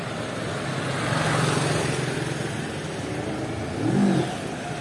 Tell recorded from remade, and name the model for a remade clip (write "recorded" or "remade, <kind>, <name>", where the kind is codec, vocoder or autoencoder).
recorded